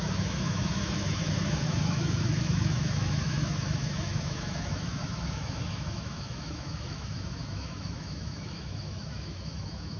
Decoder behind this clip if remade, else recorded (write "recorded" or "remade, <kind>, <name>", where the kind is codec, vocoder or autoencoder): remade, autoencoder, DAC-VAE